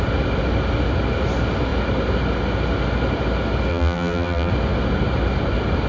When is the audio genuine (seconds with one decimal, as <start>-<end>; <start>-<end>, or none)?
0.0-3.7; 4.5-5.9